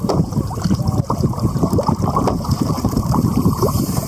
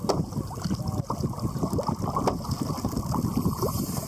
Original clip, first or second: second